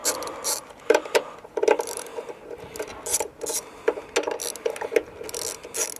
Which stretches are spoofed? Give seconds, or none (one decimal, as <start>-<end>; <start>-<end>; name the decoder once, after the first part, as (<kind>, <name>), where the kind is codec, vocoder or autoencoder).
0.0-1.5 (vocoder, BigVGAN v2)